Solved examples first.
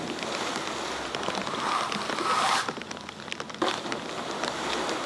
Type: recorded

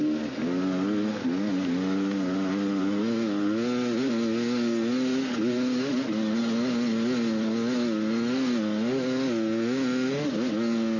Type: recorded